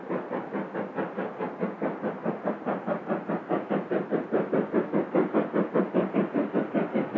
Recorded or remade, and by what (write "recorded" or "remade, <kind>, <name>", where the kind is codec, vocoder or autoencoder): recorded